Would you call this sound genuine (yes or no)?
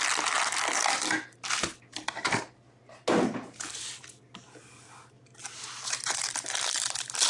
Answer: yes